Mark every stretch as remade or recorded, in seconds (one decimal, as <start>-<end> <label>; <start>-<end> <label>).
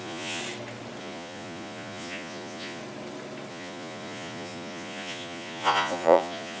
0.0-0.4 remade; 0.4-1.0 recorded; 1.0-2.8 remade; 2.8-3.5 recorded; 3.5-6.6 remade